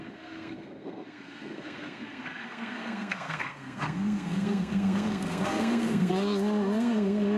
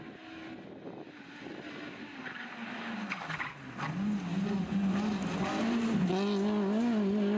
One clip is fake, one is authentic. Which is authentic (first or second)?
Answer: second